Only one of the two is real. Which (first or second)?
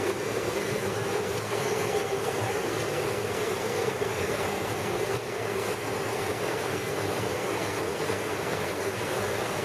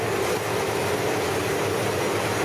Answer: second